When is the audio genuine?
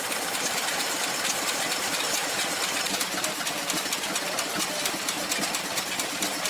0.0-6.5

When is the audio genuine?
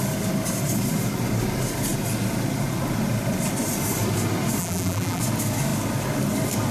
0.0-4.6; 5.2-6.7